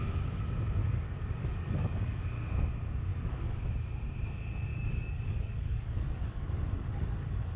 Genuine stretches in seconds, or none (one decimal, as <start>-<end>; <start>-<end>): 0.0-0.8; 2.2-3.1; 3.6-4.7